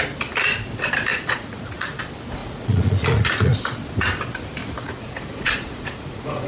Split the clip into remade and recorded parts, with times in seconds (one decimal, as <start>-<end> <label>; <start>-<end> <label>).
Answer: 0.0-1.1 recorded; 1.1-2.0 remade; 2.0-2.4 recorded; 2.4-3.5 remade; 3.5-4.6 recorded; 4.6-6.5 remade